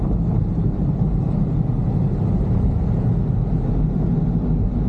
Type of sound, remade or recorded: recorded